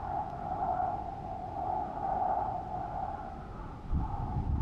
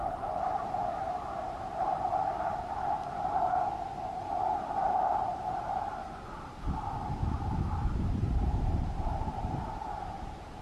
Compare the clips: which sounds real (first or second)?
first